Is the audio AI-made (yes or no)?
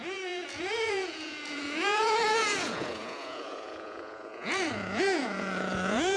yes